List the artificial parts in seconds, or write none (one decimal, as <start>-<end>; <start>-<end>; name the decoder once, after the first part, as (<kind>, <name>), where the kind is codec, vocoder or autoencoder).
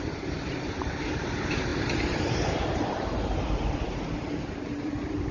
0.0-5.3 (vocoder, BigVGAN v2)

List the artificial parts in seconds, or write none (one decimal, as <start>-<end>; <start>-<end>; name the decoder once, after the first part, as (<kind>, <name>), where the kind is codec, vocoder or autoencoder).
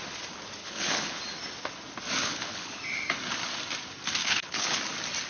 0.6-1.2 (codec, HILCodec); 2.2-2.8; 4.2-4.8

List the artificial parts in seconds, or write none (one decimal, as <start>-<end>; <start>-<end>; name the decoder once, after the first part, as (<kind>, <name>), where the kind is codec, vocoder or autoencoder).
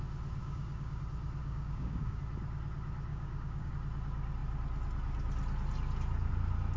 0.4-1.0 (codec, DAC); 1.4-2.2; 3.1-3.7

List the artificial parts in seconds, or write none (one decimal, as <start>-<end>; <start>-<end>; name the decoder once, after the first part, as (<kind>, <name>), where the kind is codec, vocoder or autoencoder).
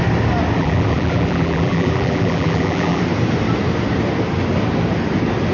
0.6-3.0 (vocoder, BigVGAN v2)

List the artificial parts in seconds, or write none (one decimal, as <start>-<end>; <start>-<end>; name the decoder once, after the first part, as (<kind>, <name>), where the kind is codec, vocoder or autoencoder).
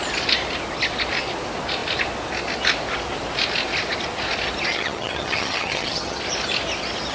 4.7-6.2 (vocoder, HiFi-GAN)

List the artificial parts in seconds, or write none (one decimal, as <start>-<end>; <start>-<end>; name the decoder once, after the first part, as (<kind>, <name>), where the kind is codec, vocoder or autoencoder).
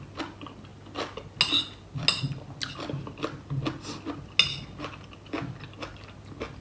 none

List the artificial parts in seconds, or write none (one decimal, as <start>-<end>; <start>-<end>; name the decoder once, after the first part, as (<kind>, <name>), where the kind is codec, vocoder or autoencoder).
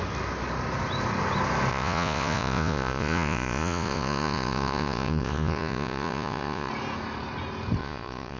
1.7-6.7 (vocoder, Vocos); 7.8-8.4